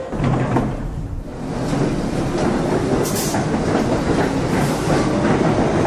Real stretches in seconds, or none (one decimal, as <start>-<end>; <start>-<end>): 0.0-5.9